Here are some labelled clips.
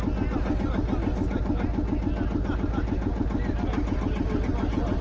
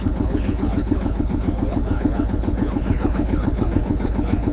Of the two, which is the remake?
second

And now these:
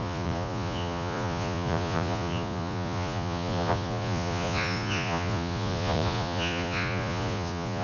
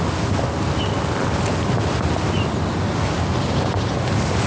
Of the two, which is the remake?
first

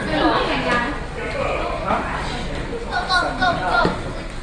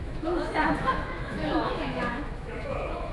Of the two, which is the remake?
second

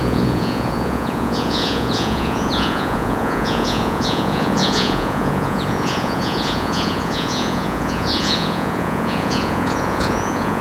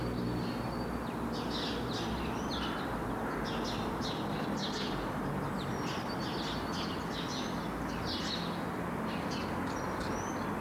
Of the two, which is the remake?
first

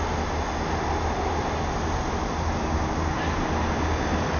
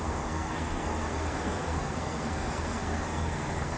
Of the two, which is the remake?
second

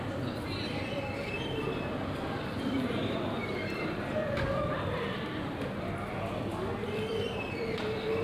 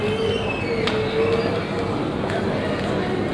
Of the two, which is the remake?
first